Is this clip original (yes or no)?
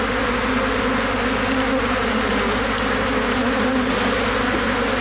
yes